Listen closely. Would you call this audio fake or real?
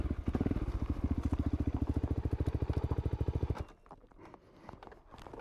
real